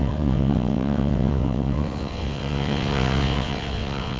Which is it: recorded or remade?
remade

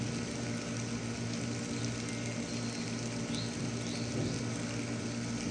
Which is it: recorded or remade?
recorded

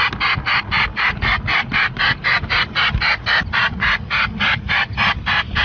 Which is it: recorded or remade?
recorded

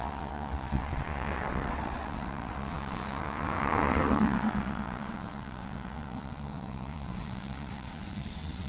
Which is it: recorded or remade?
remade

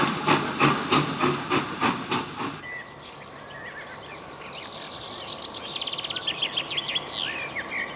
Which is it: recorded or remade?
recorded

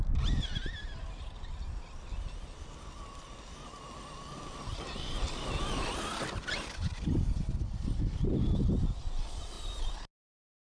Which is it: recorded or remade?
recorded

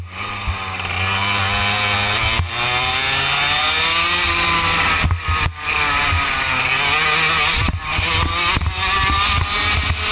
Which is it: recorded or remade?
recorded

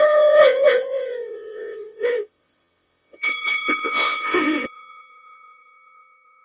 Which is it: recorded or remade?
remade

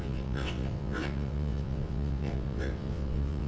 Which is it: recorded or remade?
remade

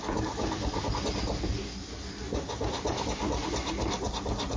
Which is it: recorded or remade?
recorded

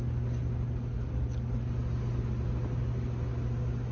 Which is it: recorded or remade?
recorded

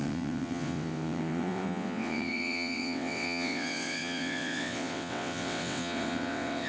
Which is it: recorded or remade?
remade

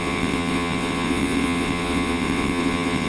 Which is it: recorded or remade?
remade